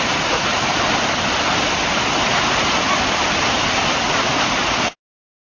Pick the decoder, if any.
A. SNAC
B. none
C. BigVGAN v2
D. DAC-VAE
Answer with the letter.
B